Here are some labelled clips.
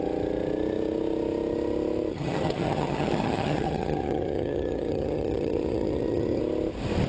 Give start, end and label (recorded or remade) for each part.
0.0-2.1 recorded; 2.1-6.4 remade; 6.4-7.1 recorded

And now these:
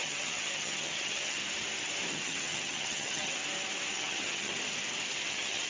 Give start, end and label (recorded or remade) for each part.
0.0-1.4 remade; 1.4-2.1 recorded; 2.1-3.4 remade; 3.4-3.9 recorded; 3.9-4.5 remade; 4.5-5.2 recorded; 5.2-5.7 remade

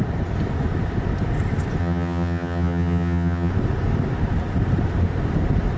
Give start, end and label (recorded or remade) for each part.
0.0-1.8 recorded; 1.8-3.5 remade; 3.5-5.8 recorded

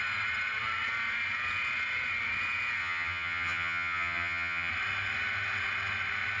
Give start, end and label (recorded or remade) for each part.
0.0-2.8 recorded; 2.8-4.7 remade; 4.7-6.4 recorded

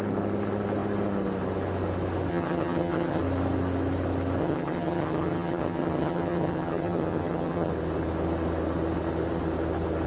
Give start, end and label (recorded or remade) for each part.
0.0-2.3 recorded; 2.3-3.2 remade; 3.2-4.4 recorded; 4.4-7.7 remade; 7.7-10.1 recorded

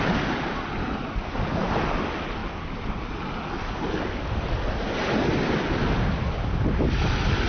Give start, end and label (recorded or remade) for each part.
0.0-7.5 recorded

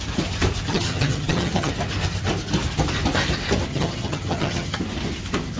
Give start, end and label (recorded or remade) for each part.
0.0-0.7 recorded; 0.7-1.7 remade; 1.7-3.7 recorded; 3.7-4.8 remade; 4.8-5.6 recorded